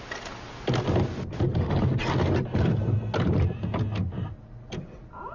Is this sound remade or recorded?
recorded